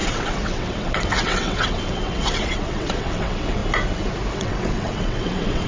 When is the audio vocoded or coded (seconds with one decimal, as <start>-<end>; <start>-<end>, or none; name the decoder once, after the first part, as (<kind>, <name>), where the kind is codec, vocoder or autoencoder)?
0.0-3.6 (vocoder, WaveNeXt); 4.3-5.7